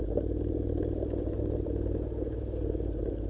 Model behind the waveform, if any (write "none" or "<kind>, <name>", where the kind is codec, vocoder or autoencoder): vocoder, BigVGAN v2